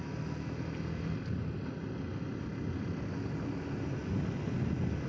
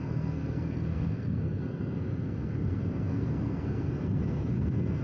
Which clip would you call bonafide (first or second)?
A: first